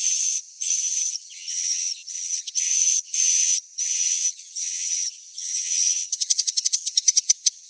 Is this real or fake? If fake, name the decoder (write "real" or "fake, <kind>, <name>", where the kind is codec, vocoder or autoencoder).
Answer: fake, vocoder, HiFi-GAN